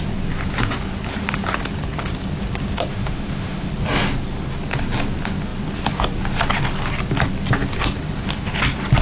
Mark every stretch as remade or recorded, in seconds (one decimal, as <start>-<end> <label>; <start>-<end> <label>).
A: 0.0-2.9 recorded; 2.9-3.7 remade; 3.7-9.0 recorded